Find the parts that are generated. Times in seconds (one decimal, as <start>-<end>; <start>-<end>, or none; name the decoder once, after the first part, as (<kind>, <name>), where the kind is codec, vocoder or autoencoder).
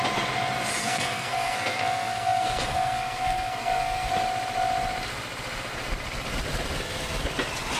0.8-4.1 (codec, SNAC)